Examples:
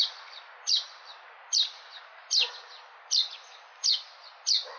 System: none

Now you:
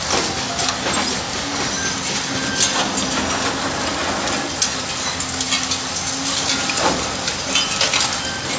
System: none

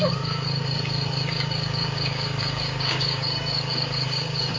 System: codec, DAC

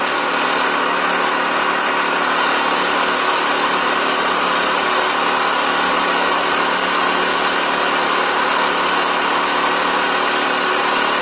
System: none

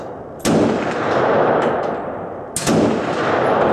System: none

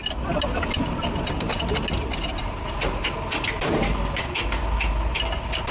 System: none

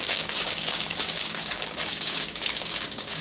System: codec, DAC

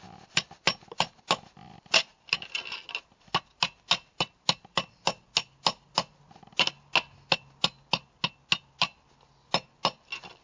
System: none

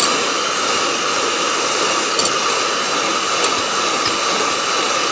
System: none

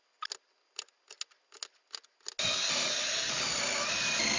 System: none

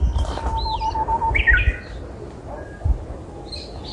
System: none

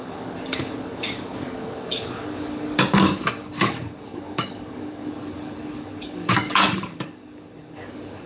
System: codec, DAC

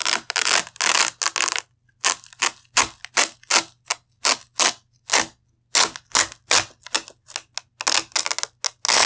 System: none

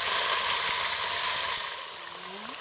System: none